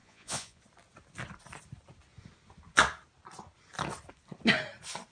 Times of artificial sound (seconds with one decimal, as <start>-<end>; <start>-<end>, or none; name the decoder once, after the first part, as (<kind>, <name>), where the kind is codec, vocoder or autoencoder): 0.0-0.6 (vocoder, Vocos)